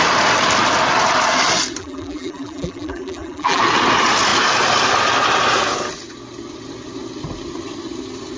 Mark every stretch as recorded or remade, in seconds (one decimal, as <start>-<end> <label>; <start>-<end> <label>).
0.0-1.8 recorded; 1.8-3.6 remade; 3.6-8.4 recorded